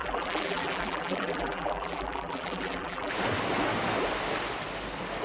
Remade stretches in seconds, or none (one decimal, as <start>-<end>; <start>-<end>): 0.0-3.1